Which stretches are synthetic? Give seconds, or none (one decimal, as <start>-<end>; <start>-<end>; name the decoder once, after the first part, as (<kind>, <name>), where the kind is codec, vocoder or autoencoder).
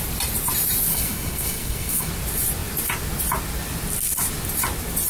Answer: 0.9-2.1 (codec, SNAC)